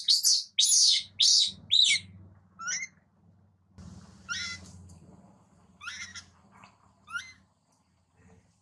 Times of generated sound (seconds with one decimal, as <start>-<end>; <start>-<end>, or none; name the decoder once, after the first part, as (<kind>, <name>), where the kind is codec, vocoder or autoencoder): 6.1-7.2 (vocoder, BigVGAN v2)